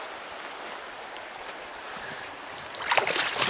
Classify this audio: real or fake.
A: real